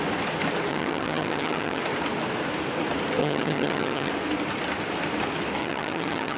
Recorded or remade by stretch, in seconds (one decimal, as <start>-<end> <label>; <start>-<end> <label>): 0.0-0.7 recorded; 0.7-1.8 remade; 1.8-3.2 recorded; 3.2-4.1 remade; 4.1-5.6 recorded; 5.6-6.4 remade